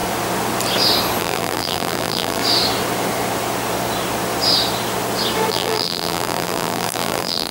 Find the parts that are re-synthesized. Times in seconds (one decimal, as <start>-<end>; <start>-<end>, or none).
1.2-2.4; 5.5-7.5